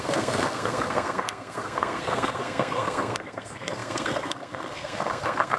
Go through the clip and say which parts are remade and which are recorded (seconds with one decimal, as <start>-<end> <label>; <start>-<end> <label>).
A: 0.0-5.6 remade